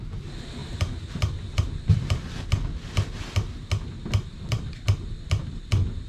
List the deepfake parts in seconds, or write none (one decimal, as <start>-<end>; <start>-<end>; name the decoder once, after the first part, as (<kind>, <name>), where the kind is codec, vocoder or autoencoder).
0.6-2.9 (vocoder, BigVGAN v2); 4.2-6.1